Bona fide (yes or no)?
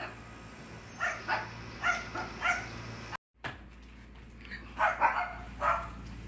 yes